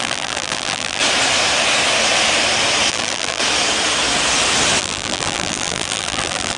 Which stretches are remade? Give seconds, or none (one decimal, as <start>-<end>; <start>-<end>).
0.0-1.0; 2.9-3.4; 4.8-6.6